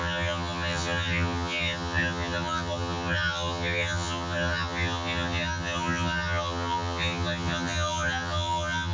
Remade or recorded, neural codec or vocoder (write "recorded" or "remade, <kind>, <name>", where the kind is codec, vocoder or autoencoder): remade, vocoder, HiFi-GAN